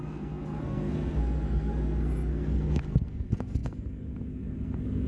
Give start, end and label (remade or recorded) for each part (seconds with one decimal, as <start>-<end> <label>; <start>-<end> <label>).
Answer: 0.0-5.1 remade